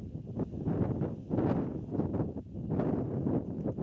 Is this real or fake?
real